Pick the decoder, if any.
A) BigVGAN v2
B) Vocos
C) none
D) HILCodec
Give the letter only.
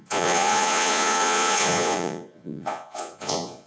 B